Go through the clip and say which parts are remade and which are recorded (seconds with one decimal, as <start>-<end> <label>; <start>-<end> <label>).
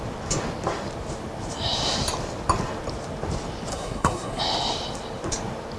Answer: 0.0-3.7 recorded; 3.7-4.4 remade; 4.4-5.8 recorded